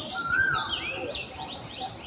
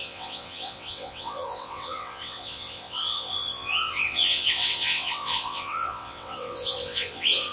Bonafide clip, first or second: first